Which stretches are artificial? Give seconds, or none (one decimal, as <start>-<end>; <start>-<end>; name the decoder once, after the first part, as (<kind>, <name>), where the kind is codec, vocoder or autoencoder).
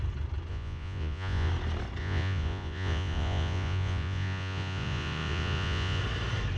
0.5-1.5 (vocoder, Vocos); 2.0-6.0